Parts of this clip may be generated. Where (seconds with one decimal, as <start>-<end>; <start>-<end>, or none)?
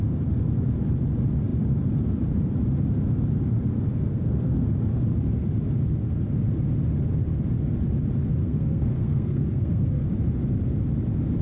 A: 3.9-4.7; 8.4-10.1